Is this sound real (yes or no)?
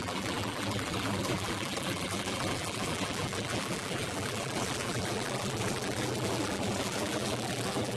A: no